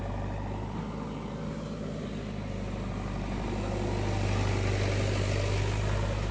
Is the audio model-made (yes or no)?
no